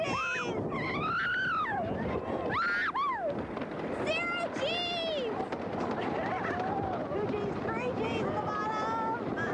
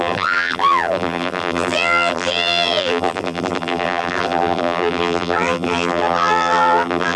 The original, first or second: first